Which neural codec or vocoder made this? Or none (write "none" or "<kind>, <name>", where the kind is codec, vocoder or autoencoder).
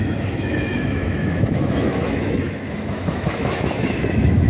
autoencoder, DAC-VAE